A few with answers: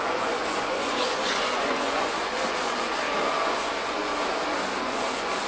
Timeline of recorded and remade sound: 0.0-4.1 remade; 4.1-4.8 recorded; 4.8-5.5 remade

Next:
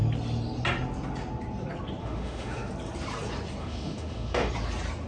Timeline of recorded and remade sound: 0.0-2.0 recorded; 2.0-2.7 remade; 2.7-3.6 recorded; 3.6-4.5 remade; 4.5-5.1 recorded

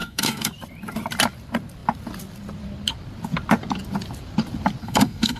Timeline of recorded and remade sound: 0.0-0.5 remade; 0.5-4.8 recorded; 4.8-5.4 remade

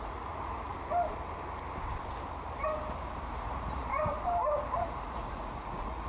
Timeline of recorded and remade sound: 0.0-0.7 remade; 0.7-3.3 recorded; 3.3-3.9 remade; 3.9-4.8 recorded; 4.8-6.1 remade

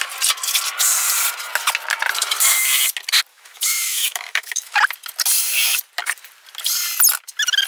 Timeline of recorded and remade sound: 0.0-3.3 recorded; 3.3-4.8 remade; 4.8-7.7 recorded

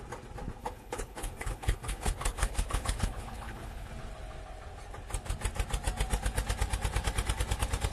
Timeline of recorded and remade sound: 0.0-0.6 recorded; 0.6-3.9 remade; 3.9-7.9 recorded

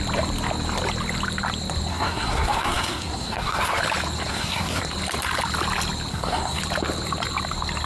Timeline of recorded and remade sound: 0.0-1.9 recorded; 1.9-3.8 remade; 3.8-4.3 recorded; 4.3-4.8 remade; 4.8-6.1 recorded; 6.1-6.6 remade; 6.6-7.9 recorded

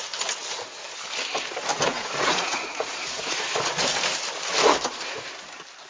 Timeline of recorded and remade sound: 0.0-1.7 recorded; 1.7-3.4 remade; 3.4-5.9 recorded